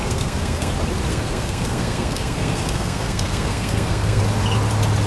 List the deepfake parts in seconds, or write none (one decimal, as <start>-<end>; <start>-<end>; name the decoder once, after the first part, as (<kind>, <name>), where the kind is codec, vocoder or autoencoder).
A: 0.0-0.7 (codec, SNAC); 1.1-4.2